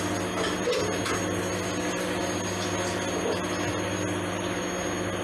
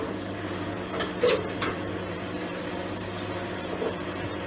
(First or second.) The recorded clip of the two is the first